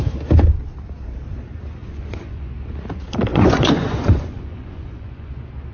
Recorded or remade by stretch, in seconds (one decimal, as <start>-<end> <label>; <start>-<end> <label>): 0.0-1.8 recorded; 1.8-2.5 remade; 2.5-3.3 recorded; 3.3-5.3 remade; 5.3-5.7 recorded

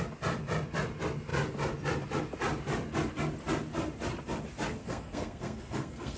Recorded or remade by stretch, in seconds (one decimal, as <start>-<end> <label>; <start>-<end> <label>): 0.0-4.8 recorded; 4.8-6.2 remade